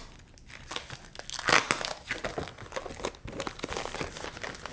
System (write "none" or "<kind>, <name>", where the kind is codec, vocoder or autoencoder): none